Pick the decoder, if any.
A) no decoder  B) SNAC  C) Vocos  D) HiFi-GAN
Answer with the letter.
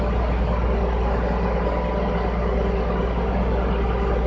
A